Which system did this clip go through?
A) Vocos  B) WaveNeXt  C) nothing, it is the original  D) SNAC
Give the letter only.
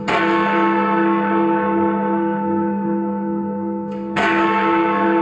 D